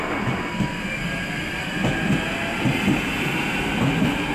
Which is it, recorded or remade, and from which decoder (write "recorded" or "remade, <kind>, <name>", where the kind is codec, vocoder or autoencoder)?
recorded